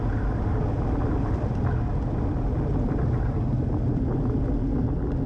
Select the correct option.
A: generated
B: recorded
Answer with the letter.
B